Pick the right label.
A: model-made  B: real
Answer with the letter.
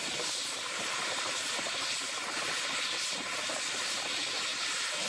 B